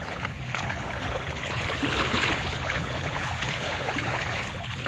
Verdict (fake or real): fake